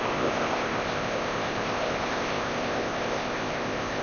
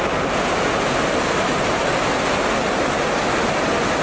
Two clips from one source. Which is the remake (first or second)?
first